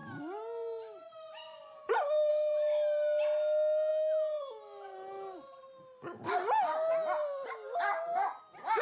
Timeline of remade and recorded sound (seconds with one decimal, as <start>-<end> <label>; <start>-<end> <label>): 0.0-8.8 recorded

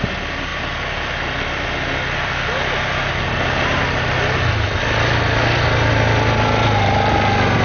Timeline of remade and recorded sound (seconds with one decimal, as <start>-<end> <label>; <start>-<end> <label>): 0.0-7.6 recorded

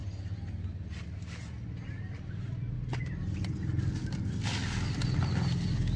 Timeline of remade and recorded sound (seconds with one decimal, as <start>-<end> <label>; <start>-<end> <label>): 0.0-6.0 recorded

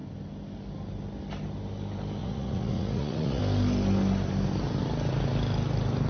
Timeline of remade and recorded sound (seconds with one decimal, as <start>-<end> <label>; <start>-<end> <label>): 0.0-2.2 recorded; 2.2-3.4 remade; 3.4-6.1 recorded